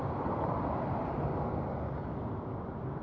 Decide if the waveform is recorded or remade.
recorded